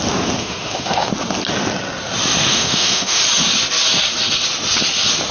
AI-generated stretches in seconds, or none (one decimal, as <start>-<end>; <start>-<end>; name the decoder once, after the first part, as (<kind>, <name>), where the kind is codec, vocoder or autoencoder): 0.4-1.1 (autoencoder, DAC-VAE); 2.5-3.2